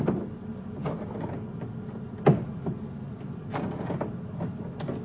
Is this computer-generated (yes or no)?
no